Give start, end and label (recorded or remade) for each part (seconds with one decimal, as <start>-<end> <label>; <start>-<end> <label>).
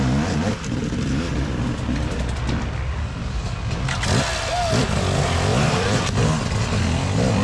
0.0-5.5 recorded; 5.5-6.0 remade; 6.0-7.4 recorded